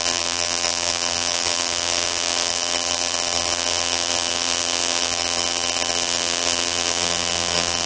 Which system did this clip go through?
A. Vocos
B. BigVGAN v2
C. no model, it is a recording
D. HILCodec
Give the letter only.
B